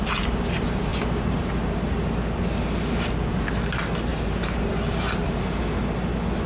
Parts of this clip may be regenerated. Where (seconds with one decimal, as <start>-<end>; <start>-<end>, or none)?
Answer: 0.9-1.5; 4.1-5.6